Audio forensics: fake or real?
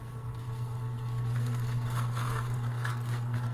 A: fake